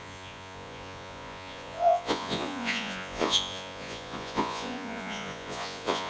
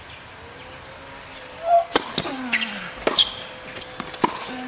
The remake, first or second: first